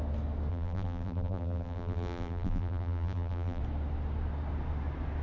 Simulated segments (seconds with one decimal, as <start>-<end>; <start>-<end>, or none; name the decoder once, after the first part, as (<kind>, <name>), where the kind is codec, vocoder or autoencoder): 0.5-3.6 (vocoder, BigVGAN v2)

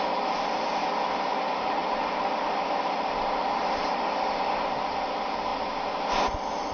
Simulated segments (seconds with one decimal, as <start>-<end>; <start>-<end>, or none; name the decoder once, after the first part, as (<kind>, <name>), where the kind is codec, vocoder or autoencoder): 0.0-6.7 (vocoder, BigVGAN v2)

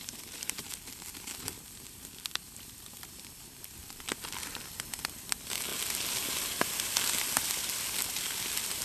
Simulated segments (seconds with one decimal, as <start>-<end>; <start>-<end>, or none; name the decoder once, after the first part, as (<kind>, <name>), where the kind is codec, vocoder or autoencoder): 0.0-5.7 (vocoder, BigVGAN v2); 6.3-8.8